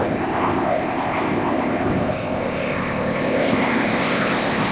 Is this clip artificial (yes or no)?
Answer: yes